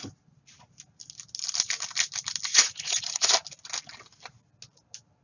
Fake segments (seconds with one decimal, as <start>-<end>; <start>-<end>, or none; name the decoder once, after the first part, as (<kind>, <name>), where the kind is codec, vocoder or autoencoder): 2.5-3.3 (vocoder, Vocos)